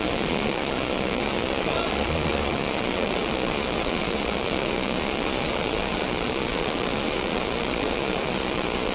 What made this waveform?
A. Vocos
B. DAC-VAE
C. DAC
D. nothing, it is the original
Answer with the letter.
A